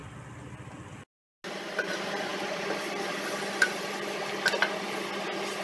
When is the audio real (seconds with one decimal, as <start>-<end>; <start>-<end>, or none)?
0.0-5.6